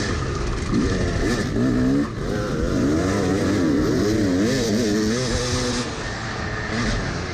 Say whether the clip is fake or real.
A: real